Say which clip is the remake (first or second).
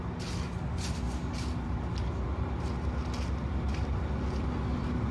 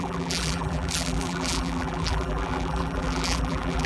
second